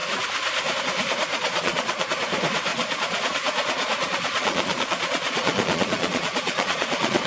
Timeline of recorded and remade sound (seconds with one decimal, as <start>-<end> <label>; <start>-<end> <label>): 0.0-1.3 recorded; 1.3-2.1 remade; 2.1-2.7 recorded; 2.7-7.3 remade